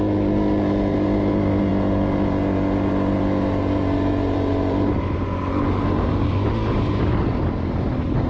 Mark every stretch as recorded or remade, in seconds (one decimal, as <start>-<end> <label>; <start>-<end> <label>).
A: 0.0-8.3 recorded